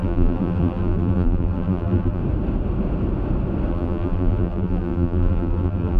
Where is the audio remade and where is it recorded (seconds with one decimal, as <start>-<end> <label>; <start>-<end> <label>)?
0.0-2.2 remade; 2.2-3.7 recorded; 3.7-6.0 remade